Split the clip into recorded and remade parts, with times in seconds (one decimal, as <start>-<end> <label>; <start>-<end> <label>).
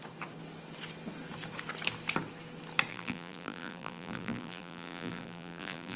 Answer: 0.0-2.9 recorded; 2.9-6.0 remade